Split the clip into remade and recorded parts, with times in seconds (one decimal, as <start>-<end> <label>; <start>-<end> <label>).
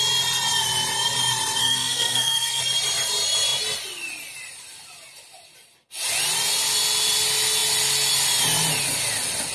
0.0-1.6 recorded; 1.6-2.6 remade; 2.6-9.5 recorded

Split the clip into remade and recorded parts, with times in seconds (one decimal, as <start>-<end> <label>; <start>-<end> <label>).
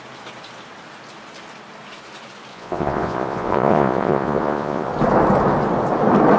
0.0-2.5 recorded; 2.5-4.9 remade; 4.9-6.4 recorded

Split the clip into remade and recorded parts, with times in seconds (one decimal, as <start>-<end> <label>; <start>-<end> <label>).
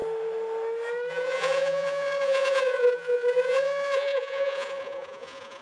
0.0-1.1 recorded; 1.1-5.6 remade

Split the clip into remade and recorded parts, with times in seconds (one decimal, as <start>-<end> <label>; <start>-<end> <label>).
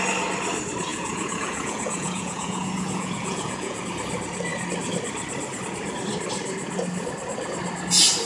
0.0-0.9 recorded; 0.9-3.8 remade; 3.8-8.3 recorded